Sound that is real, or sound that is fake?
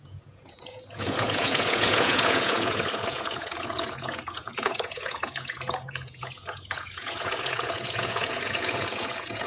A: fake